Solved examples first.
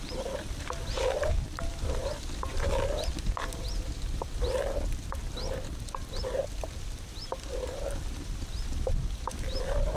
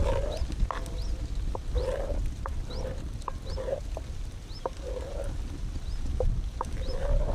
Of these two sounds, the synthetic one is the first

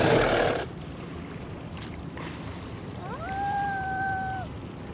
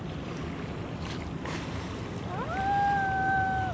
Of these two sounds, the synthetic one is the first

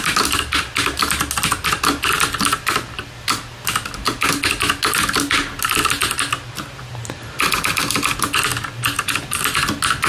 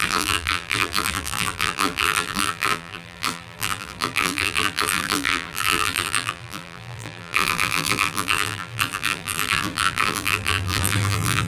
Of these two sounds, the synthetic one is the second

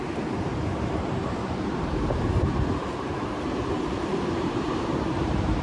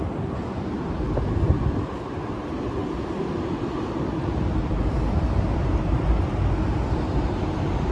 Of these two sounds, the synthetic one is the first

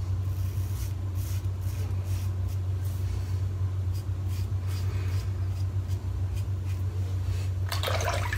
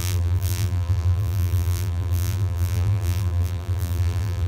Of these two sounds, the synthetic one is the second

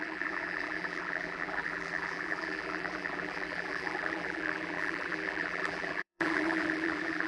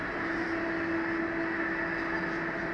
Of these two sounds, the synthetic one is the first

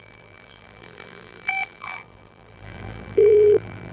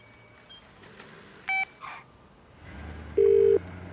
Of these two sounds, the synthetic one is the first